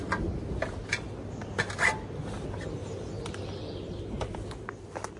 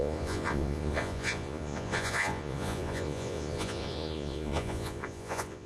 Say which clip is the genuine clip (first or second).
first